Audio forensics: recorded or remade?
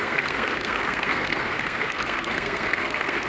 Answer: remade